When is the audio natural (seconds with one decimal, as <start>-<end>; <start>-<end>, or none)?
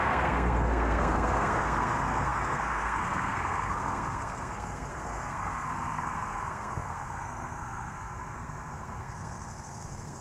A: none